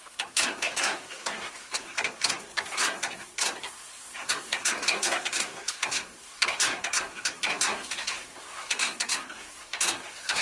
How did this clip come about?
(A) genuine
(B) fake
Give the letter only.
B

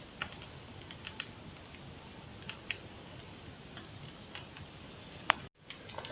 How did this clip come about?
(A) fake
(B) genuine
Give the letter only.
B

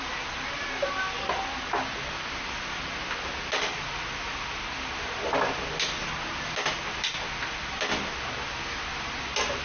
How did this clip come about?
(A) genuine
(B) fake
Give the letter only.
A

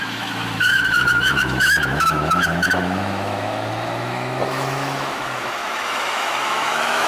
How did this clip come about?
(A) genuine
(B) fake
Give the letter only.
B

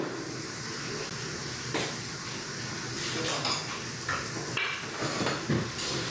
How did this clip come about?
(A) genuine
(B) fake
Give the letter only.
A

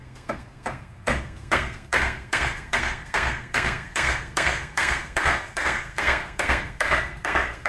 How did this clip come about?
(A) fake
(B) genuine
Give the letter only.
A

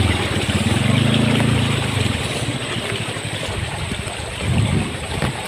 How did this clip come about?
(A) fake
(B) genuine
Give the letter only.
B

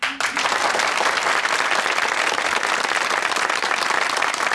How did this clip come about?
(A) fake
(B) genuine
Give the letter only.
B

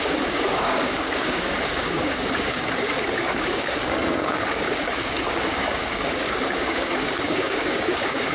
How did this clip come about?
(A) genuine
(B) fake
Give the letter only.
B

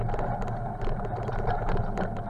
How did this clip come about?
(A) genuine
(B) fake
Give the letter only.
A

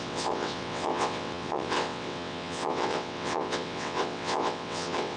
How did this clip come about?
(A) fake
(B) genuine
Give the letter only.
A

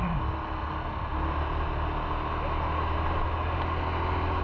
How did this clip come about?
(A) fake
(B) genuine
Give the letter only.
B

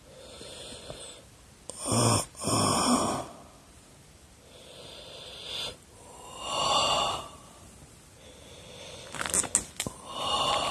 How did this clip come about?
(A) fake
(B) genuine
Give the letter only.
B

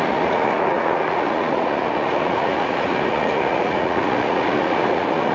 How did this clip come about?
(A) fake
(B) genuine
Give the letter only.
A